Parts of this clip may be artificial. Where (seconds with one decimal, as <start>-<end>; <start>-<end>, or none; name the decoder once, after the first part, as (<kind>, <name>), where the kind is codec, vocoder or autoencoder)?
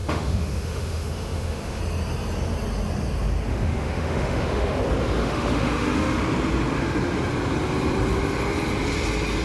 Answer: 0.0-1.8 (autoencoder, DAC-VAE); 3.5-4.8; 5.2-6.2